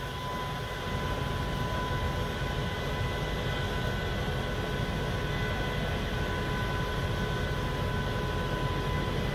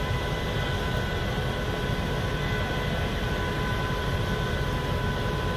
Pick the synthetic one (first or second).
second